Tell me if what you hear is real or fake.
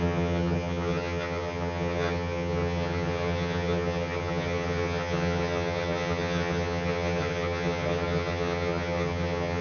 fake